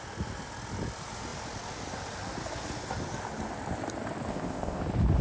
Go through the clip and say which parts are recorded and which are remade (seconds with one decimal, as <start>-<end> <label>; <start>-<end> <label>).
0.0-4.3 recorded; 4.3-4.8 remade; 4.8-5.2 recorded